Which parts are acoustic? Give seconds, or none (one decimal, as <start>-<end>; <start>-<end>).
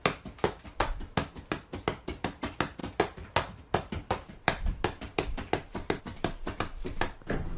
0.0-7.6